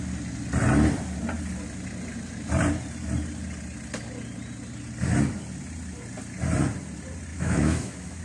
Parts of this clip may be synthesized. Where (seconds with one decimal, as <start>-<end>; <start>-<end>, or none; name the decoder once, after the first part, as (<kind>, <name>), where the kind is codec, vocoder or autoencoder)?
7.3-8.2 (autoencoder, DAC-VAE)